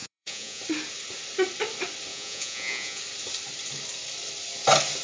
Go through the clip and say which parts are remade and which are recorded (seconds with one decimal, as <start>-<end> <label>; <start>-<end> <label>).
0.0-0.6 remade; 0.6-2.1 recorded; 2.1-3.0 remade; 3.0-5.0 recorded